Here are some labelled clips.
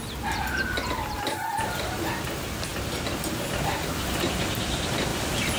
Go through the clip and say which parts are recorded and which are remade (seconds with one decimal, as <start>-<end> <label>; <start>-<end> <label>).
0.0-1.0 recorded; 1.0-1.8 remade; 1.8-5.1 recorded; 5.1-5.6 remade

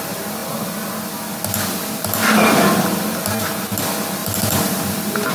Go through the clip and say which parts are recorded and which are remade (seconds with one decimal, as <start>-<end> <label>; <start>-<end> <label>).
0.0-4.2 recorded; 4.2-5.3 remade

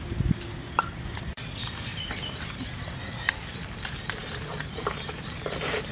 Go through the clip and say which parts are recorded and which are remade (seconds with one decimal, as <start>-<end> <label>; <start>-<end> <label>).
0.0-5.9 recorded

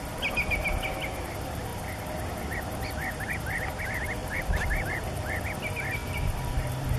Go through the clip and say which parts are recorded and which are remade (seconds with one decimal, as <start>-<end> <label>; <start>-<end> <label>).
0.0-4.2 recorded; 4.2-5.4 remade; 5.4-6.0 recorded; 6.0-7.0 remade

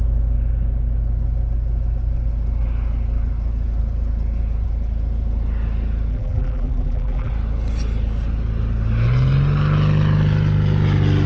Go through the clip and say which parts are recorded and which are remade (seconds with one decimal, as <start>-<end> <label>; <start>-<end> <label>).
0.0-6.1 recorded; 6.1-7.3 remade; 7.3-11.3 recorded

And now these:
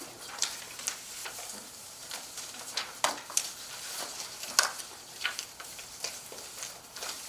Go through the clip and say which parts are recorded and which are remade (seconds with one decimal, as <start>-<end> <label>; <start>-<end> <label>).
0.0-1.2 recorded; 1.2-3.0 remade; 3.0-7.3 recorded